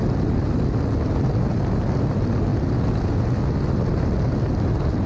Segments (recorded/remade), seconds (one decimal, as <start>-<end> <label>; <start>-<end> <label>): 0.0-5.1 recorded